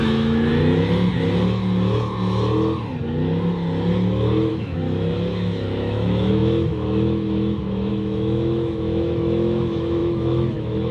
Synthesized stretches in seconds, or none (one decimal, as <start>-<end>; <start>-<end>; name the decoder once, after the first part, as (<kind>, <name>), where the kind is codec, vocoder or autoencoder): 0.0-0.5 (autoencoder, DAC-VAE); 4.5-10.9

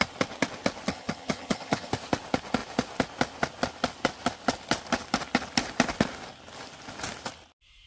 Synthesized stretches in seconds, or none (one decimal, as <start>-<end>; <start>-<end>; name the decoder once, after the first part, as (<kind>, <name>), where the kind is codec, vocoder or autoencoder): 0.9-1.9 (vocoder, HiFi-GAN)

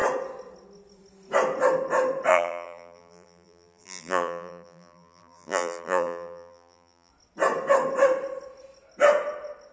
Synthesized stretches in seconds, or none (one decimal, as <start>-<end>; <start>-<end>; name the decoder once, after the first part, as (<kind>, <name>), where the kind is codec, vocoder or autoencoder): 2.3-7.1 (vocoder, BigVGAN v2)